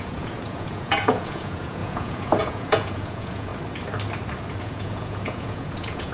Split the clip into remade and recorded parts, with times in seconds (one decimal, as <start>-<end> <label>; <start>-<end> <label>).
0.0-3.5 remade; 3.5-4.6 recorded; 4.6-6.1 remade